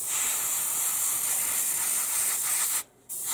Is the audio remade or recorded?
recorded